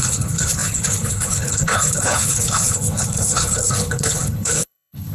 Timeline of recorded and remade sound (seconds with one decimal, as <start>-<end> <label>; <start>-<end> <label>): 0.0-5.1 remade